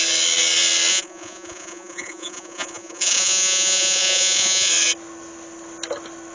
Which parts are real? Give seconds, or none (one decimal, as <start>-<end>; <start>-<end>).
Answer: 0.0-0.9; 4.7-6.3